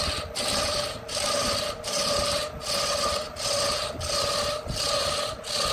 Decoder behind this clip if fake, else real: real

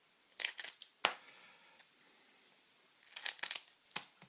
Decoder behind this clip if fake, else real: real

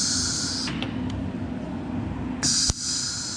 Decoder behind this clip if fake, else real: real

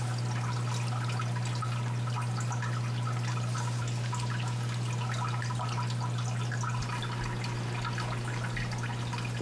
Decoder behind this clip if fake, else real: real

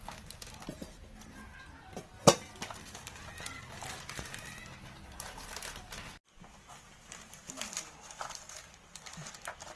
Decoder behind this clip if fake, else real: real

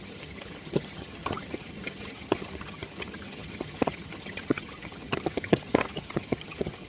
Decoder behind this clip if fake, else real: fake, vocoder, HiFi-GAN